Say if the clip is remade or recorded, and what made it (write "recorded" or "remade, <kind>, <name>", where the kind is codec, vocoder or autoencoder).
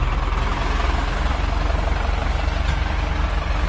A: recorded